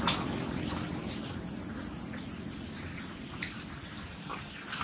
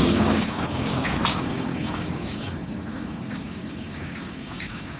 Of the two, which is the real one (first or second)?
first